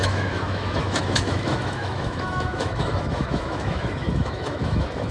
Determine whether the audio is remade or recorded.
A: remade